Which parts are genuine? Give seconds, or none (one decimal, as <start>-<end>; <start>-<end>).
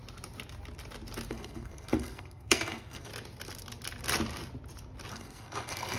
0.0-1.3; 3.1-5.1